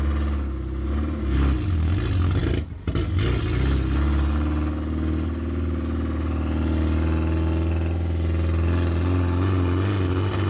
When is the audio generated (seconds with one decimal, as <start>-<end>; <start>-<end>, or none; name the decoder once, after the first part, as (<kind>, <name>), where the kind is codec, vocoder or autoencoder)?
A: none